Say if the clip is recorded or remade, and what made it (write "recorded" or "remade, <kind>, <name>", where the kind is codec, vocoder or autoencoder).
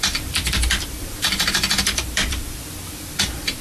remade, vocoder, BigVGAN v2